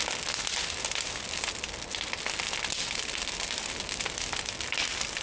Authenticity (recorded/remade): recorded